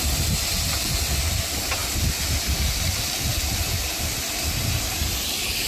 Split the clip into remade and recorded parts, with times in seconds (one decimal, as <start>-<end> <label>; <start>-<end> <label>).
0.0-5.7 recorded